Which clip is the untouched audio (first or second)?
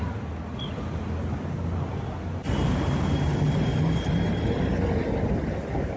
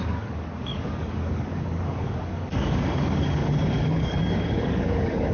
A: first